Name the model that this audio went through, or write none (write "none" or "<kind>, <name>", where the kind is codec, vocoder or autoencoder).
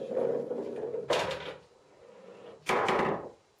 none